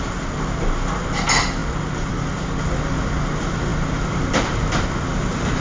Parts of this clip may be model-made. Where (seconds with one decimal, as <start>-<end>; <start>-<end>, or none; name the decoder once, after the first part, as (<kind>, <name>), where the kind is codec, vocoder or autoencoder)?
none